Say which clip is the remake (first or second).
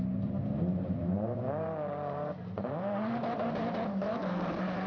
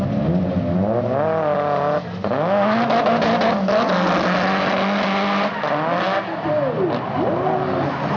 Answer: first